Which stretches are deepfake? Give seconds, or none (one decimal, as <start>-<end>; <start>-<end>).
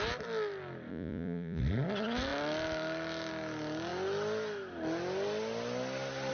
0.9-1.6